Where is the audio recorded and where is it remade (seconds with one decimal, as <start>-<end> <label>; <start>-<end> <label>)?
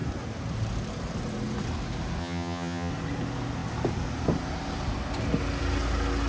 0.0-2.2 recorded; 2.2-2.9 remade; 2.9-6.3 recorded